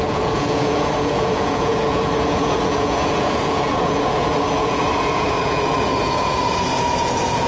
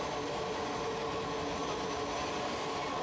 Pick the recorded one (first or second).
second